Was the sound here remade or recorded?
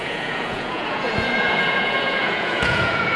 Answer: remade